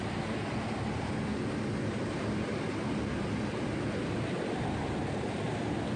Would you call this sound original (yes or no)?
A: yes